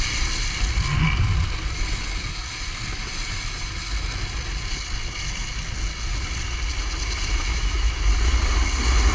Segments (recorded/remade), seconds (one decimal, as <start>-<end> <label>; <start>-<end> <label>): 0.0-7.3 recorded; 7.3-8.0 remade; 8.0-9.1 recorded